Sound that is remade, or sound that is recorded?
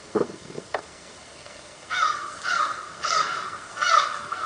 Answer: remade